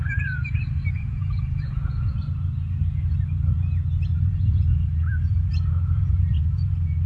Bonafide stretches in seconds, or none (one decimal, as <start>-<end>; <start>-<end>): 2.2-4.3